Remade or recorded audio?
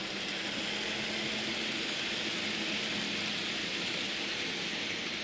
recorded